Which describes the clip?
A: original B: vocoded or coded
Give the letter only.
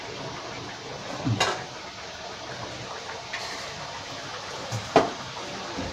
B